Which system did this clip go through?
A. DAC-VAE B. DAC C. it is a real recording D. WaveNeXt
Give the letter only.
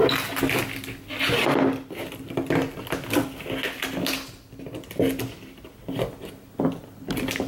C